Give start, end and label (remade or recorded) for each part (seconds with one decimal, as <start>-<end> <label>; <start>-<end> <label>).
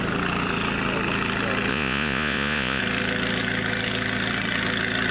0.0-1.7 recorded; 1.7-2.8 remade; 2.8-5.1 recorded